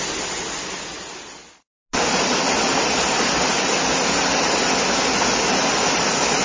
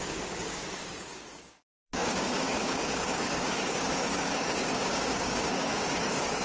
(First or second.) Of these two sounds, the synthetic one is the second